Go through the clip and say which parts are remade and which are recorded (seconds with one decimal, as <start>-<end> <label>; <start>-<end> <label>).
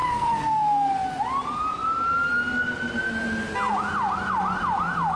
0.0-0.9 remade; 0.9-5.2 recorded